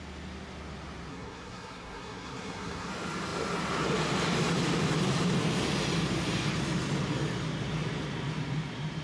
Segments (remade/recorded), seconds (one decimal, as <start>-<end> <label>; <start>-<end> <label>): 0.0-1.1 recorded; 1.1-2.9 remade; 2.9-9.0 recorded